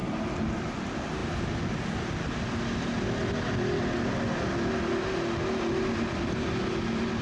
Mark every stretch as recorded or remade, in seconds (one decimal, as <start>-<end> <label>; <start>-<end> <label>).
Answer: 0.0-7.2 recorded